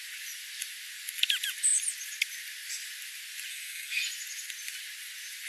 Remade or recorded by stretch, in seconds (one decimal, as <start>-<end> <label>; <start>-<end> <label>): 0.0-3.5 recorded; 3.5-4.0 remade; 4.0-5.5 recorded